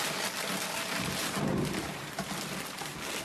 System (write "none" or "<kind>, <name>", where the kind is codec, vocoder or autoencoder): none